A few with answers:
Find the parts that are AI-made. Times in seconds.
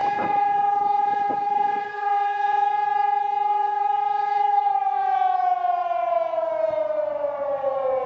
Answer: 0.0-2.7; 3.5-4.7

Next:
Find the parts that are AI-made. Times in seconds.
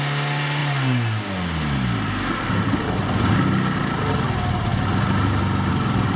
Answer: none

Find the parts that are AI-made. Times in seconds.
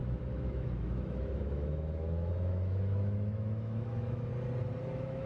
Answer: 0.0-4.3; 4.8-5.3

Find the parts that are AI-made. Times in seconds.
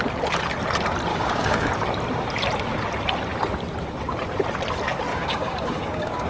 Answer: 1.1-1.7; 5.1-6.3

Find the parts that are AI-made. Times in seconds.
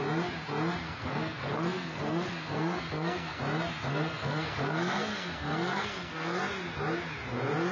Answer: 0.8-3.4; 3.9-6.4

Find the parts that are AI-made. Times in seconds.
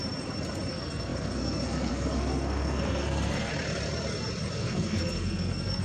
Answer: 0.7-3.5; 4.5-5.8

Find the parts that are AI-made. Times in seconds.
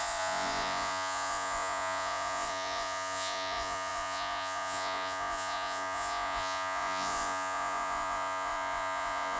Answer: 0.0-9.4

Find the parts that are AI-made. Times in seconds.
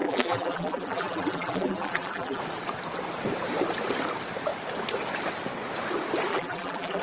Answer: 0.0-2.4; 6.3-7.0